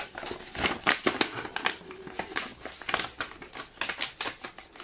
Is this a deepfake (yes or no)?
no